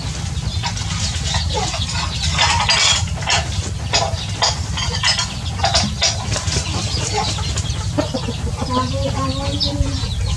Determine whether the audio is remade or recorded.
recorded